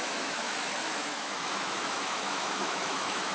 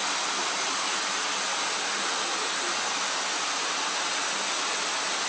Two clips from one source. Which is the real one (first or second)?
second